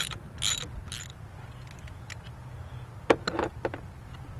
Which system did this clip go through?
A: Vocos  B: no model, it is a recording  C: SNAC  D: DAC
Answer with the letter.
B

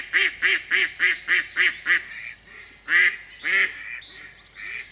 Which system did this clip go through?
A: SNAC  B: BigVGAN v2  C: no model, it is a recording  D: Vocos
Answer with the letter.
C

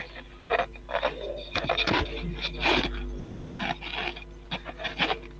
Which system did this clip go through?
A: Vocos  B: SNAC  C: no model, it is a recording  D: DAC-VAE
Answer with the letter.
C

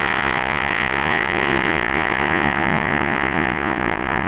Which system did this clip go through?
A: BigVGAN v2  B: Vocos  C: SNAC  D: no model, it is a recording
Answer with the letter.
B